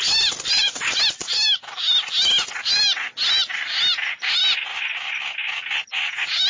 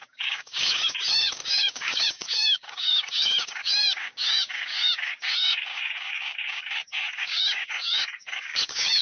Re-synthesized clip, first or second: second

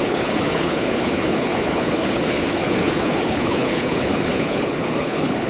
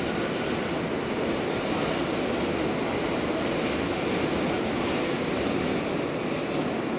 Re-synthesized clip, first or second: first